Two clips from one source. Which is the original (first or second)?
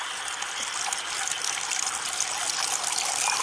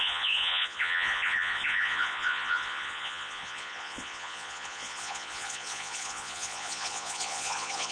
first